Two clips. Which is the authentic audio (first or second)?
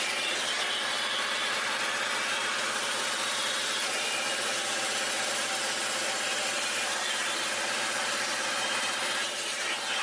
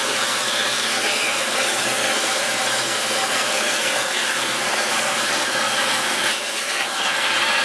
first